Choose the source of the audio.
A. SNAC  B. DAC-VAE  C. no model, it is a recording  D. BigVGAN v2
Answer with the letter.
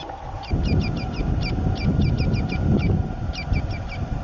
C